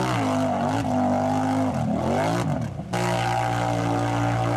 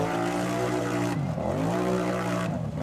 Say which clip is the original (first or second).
first